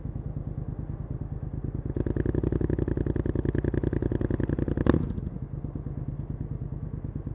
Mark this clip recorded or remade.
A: recorded